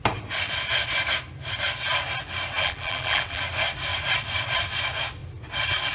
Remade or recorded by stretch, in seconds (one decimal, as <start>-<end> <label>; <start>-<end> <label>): 0.0-2.6 recorded; 2.6-3.4 remade; 3.4-5.9 recorded